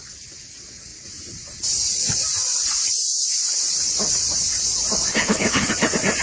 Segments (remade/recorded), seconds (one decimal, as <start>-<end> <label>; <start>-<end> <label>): 0.0-5.1 recorded; 5.1-5.7 remade; 5.7-6.2 recorded